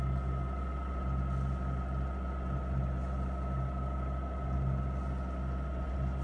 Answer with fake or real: real